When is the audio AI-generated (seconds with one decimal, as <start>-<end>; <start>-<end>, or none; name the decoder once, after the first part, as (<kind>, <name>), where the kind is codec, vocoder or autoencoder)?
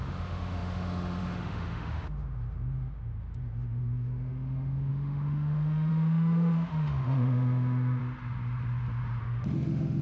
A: 0.0-8.0 (autoencoder, DAC-VAE); 9.2-10.0